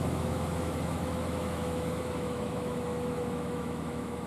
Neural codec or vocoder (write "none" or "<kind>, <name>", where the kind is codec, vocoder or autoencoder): autoencoder, DAC-VAE